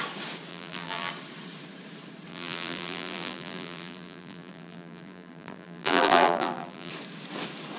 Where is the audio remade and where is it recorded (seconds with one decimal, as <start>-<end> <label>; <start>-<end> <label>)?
0.0-0.5 recorded; 0.5-1.1 remade; 1.1-2.3 recorded; 2.3-6.9 remade; 6.9-7.8 recorded